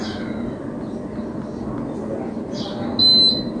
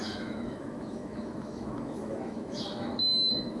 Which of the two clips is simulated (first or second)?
second